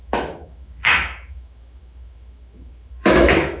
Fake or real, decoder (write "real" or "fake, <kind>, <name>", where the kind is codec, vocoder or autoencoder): fake, autoencoder, DAC-VAE